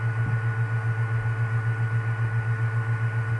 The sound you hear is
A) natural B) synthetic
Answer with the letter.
A